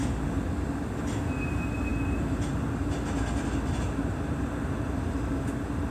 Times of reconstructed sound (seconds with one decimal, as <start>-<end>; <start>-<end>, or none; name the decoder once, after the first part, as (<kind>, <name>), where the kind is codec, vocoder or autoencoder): none